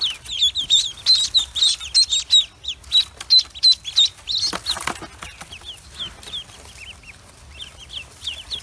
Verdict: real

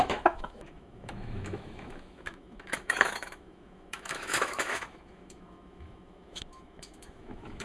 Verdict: fake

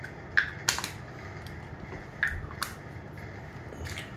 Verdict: real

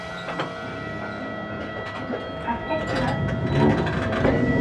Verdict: real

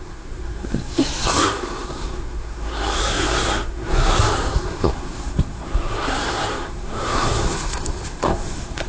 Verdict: fake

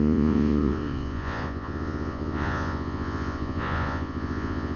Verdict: fake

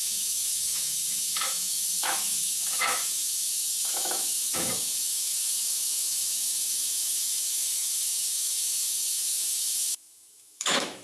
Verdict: fake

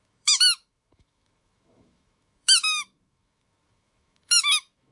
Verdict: fake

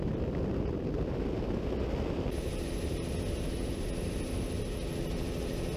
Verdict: real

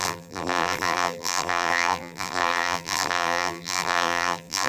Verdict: fake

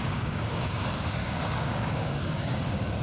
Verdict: fake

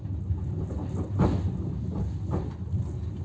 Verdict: real